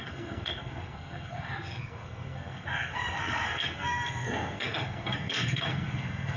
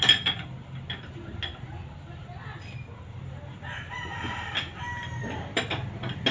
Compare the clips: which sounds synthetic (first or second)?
first